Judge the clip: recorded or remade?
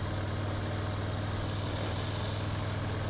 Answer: recorded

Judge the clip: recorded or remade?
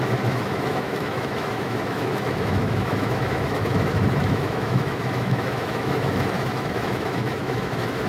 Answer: remade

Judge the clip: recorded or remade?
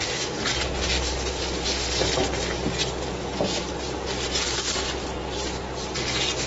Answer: recorded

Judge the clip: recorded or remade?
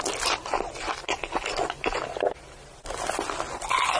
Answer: recorded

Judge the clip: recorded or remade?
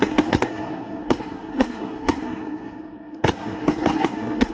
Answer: remade